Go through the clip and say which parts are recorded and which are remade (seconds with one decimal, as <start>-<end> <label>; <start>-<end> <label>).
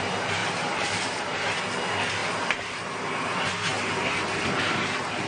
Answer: 0.0-0.4 recorded; 0.4-1.6 remade; 1.6-2.2 recorded; 2.2-2.9 remade; 2.9-5.3 recorded